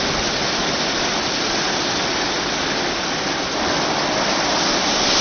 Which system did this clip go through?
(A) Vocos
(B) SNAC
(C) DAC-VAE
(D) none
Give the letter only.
D